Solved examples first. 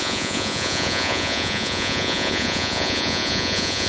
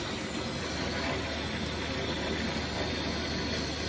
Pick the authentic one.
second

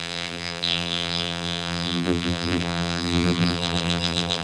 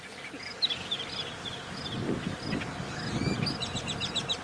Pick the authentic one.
second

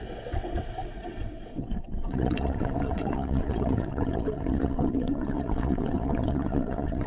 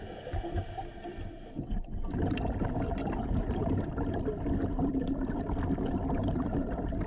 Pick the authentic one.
second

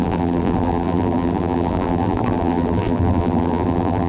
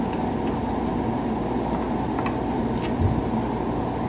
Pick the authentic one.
second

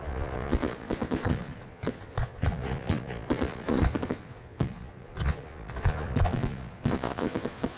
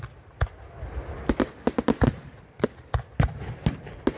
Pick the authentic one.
second